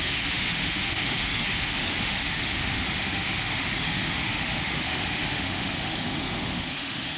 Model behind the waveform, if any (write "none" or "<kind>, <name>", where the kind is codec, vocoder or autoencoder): autoencoder, DAC-VAE